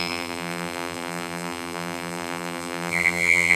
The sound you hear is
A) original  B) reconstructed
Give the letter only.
B